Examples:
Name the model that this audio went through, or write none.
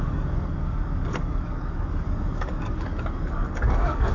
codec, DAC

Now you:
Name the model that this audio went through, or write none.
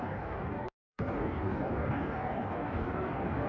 codec, DAC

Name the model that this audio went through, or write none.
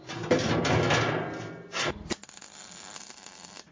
none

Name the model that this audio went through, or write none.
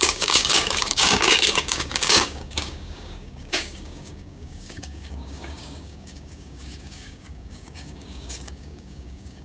codec, DAC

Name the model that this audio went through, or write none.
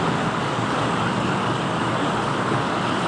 codec, DAC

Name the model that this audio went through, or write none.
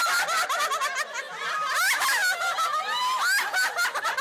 none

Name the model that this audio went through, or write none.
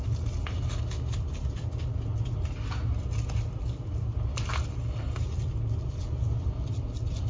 none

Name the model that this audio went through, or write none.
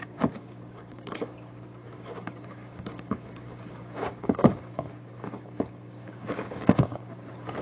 codec, DAC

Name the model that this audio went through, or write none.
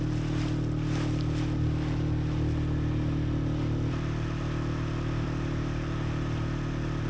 none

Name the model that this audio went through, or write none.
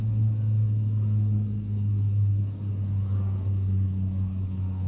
codec, DAC